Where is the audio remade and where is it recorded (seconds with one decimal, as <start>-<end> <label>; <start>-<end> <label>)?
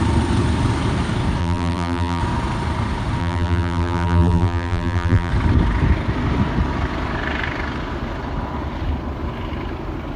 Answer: 0.0-1.4 recorded; 1.4-2.2 remade; 2.2-3.2 recorded; 3.2-5.3 remade; 5.3-10.2 recorded